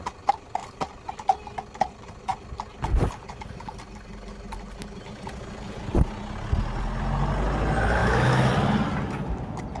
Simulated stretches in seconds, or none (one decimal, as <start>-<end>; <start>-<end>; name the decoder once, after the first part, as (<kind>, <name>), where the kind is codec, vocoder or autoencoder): 8.0-8.5 (autoencoder, DAC-VAE)